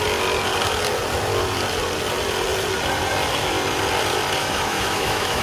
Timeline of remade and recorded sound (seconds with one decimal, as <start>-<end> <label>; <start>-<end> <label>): 0.0-4.4 recorded; 4.4-5.4 remade